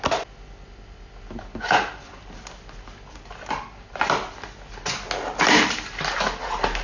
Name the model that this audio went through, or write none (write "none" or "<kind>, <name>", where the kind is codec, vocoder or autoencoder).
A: none